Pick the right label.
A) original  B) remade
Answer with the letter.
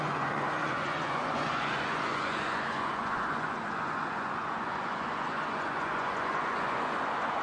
B